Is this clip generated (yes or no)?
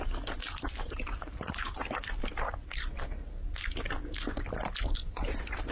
no